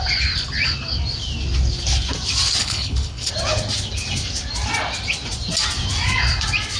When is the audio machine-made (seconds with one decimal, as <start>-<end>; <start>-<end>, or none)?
2.6-3.3